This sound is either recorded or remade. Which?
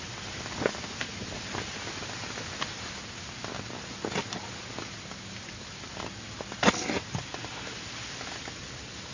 recorded